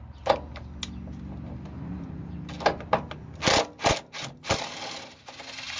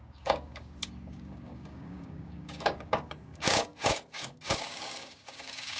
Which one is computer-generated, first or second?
second